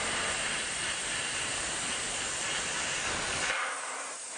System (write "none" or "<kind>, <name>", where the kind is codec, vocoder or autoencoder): vocoder, BigVGAN v2